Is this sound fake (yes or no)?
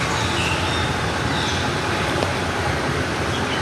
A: no